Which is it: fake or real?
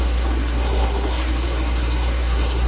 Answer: fake